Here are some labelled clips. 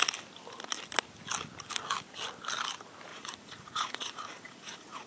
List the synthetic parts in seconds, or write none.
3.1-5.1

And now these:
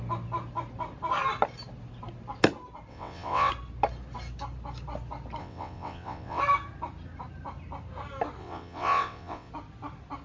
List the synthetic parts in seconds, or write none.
2.9-3.5; 5.4-6.4; 8.4-9.5

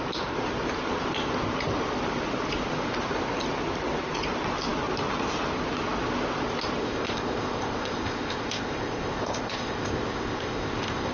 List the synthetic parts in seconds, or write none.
6.8-11.1

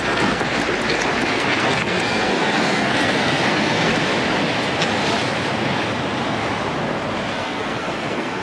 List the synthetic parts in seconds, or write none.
0.0-0.6; 1.3-3.9; 7.3-8.4

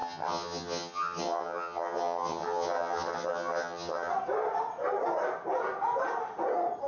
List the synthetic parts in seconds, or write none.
0.0-4.1

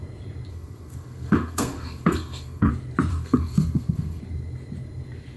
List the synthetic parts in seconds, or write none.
0.5-2.7; 3.1-4.2

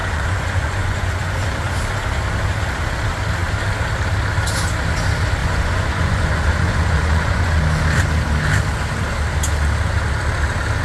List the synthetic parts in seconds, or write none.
0.0-1.4; 5.4-7.6